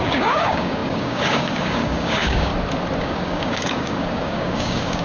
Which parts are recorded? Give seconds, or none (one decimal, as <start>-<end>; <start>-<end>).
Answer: 2.5-3.0